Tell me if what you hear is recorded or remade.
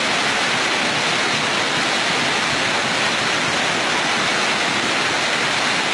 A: recorded